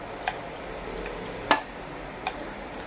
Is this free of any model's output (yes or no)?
yes